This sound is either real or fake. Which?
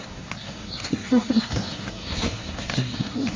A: fake